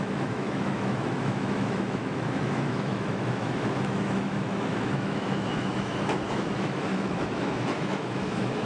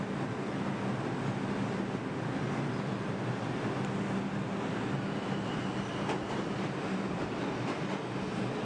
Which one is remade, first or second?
first